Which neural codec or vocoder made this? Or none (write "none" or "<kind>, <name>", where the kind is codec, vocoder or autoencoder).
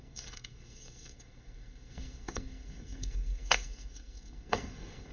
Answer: codec, SNAC